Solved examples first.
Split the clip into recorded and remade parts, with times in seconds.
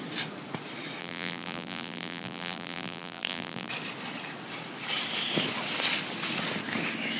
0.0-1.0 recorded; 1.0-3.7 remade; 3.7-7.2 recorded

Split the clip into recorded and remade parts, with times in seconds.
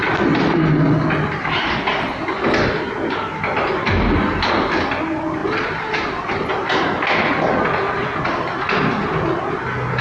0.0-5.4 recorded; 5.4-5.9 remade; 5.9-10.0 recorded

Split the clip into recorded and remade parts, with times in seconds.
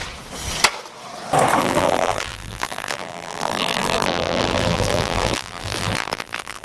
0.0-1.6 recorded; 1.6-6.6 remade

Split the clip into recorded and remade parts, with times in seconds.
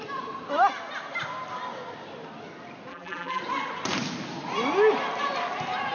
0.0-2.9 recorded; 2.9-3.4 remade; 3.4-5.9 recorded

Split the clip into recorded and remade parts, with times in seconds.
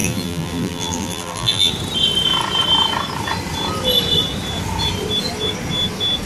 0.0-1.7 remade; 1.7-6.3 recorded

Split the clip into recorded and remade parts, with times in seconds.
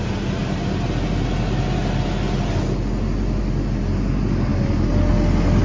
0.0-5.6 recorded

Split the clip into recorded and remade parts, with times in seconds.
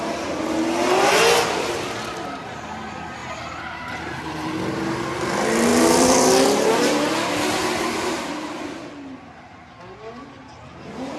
0.0-5.7 recorded; 5.7-7.0 remade; 7.0-11.2 recorded